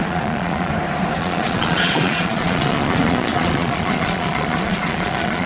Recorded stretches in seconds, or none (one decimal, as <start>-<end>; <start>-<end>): 0.7-1.2